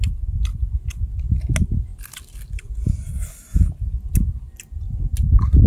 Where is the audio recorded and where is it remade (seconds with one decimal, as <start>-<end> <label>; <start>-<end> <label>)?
0.0-5.7 recorded